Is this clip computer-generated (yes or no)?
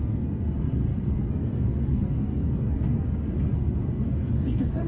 yes